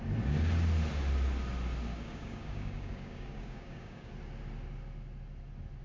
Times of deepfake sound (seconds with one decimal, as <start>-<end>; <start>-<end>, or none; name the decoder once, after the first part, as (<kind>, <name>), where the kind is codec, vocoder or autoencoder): 1.9-4.1 (codec, DAC)